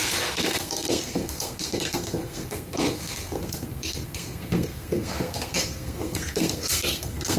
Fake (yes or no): yes